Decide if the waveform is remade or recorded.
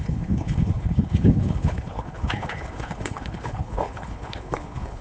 remade